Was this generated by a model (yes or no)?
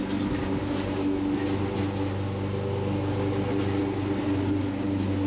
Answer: no